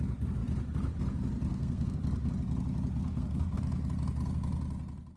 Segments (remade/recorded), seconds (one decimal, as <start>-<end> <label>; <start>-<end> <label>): 0.0-1.5 recorded; 1.5-2.0 remade; 2.0-3.0 recorded; 3.0-3.6 remade; 3.6-5.2 recorded